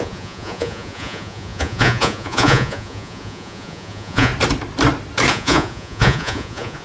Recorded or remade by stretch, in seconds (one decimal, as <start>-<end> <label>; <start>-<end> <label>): 0.0-4.3 remade; 4.3-5.3 recorded; 5.3-6.8 remade